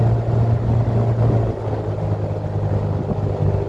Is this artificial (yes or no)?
no